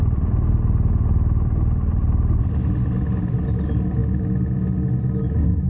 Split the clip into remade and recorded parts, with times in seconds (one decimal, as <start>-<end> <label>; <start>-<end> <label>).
0.0-3.4 remade; 3.4-5.7 recorded

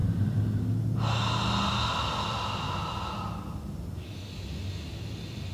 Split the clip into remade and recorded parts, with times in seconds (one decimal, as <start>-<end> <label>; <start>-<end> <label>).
0.0-5.5 recorded

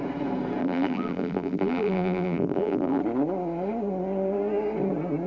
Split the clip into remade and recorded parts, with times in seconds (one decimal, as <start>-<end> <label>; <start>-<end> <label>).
0.0-0.6 recorded; 0.6-3.0 remade; 3.0-5.3 recorded

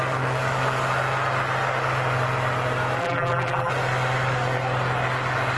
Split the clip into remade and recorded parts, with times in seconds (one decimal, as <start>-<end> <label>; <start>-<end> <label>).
0.0-3.0 recorded; 3.0-3.7 remade; 3.7-5.6 recorded

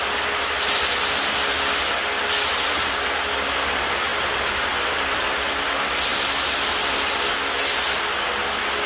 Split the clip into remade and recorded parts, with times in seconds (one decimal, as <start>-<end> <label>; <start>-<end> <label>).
0.0-4.7 recorded; 4.7-5.6 remade; 5.6-8.9 recorded